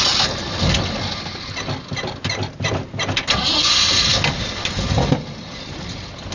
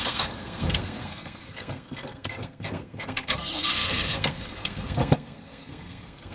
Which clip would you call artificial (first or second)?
second